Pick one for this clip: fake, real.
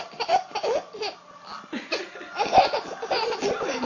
real